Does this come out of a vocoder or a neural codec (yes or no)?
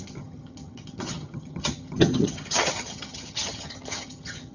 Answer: yes